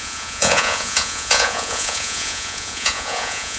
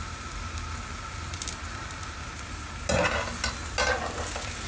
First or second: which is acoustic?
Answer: second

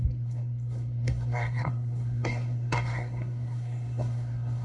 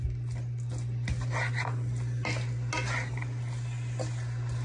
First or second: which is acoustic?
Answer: second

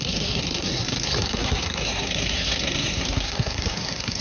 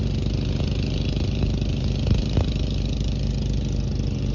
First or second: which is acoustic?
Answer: second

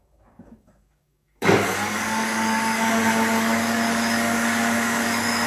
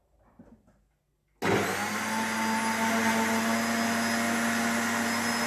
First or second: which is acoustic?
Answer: second